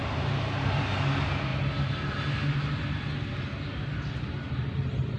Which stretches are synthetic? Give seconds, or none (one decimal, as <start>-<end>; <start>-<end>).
none